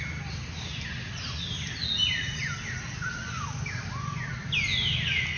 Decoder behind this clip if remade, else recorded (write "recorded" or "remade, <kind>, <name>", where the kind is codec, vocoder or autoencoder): recorded